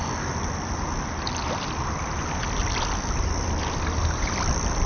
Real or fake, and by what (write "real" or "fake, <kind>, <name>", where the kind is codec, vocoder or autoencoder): real